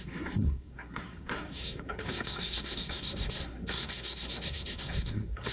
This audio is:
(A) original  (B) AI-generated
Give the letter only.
B